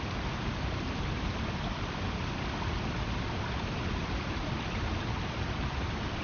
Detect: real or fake fake